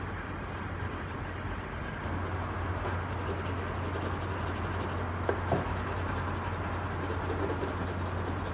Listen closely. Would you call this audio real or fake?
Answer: real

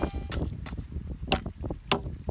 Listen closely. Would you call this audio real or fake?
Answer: real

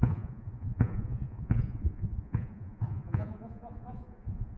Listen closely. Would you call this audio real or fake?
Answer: fake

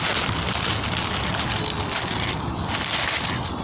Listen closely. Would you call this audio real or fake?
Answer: real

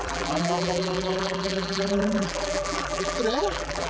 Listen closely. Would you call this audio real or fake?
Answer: fake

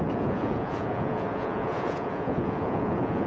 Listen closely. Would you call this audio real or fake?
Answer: fake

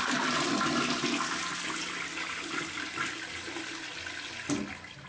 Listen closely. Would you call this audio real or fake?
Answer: real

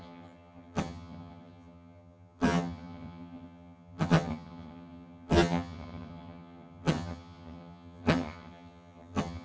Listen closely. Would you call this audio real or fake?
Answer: fake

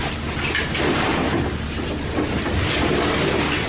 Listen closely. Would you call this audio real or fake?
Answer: real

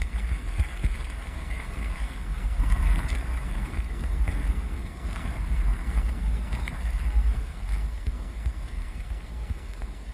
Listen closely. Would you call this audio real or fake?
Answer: fake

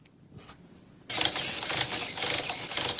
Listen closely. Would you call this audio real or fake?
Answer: real